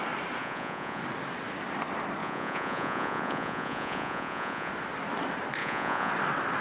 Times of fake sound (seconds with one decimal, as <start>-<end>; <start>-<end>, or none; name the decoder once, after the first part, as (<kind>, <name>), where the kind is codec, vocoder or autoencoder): 0.4-1.0 (vocoder, Vocos); 2.2-4.7; 5.6-6.1